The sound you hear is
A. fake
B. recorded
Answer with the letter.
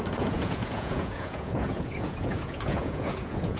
A